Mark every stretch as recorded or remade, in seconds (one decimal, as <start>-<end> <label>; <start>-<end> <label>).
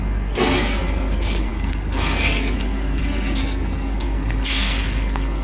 0.0-5.4 remade